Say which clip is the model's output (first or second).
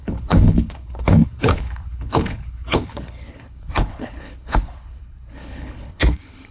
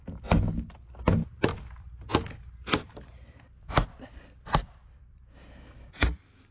first